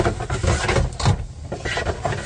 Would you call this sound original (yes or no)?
yes